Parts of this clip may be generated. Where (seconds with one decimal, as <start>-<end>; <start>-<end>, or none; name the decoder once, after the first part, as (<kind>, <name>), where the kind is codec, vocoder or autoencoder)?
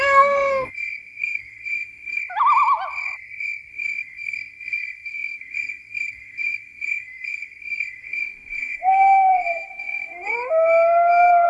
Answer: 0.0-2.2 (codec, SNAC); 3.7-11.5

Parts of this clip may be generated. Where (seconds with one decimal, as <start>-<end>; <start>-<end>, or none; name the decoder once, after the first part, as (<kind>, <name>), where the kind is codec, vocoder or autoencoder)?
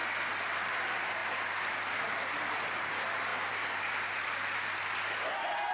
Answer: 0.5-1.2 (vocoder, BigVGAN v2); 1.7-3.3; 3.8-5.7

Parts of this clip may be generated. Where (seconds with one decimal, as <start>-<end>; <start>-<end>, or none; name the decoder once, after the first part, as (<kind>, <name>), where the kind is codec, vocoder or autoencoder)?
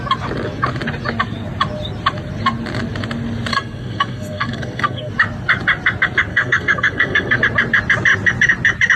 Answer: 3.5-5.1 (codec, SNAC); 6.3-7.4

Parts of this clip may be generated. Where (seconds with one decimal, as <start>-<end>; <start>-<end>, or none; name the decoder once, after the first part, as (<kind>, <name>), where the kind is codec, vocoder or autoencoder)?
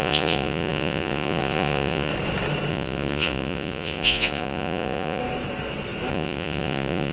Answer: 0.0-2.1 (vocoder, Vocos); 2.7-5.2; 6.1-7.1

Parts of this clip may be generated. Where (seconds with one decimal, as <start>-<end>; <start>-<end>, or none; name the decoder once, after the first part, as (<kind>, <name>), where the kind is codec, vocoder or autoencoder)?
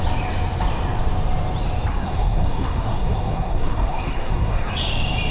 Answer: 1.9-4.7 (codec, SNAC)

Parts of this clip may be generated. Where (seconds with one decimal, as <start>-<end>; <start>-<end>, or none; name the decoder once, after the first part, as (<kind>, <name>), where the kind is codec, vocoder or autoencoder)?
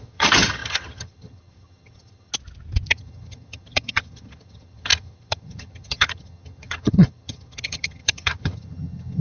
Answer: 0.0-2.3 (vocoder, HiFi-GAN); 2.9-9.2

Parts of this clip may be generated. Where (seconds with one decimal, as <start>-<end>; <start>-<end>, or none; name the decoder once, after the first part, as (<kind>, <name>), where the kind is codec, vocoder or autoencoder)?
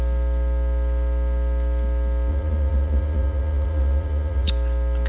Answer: 2.3-4.5 (vocoder, Vocos)